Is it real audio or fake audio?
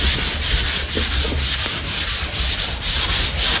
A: real